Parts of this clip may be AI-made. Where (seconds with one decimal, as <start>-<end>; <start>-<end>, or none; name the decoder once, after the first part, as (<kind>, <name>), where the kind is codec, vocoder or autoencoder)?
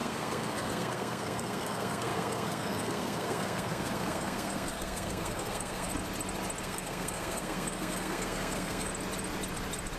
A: 0.0-5.9 (codec, SNAC); 6.6-8.9